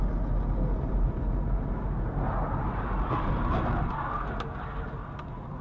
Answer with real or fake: real